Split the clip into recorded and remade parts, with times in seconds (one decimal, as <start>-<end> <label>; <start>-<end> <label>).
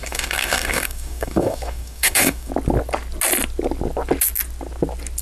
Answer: 0.0-2.5 remade; 2.5-5.2 recorded